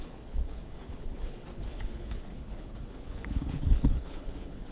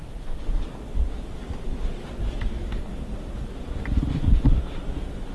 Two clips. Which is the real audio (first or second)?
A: second